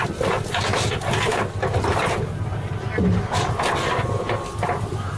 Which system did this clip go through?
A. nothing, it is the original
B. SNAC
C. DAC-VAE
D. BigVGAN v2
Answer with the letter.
A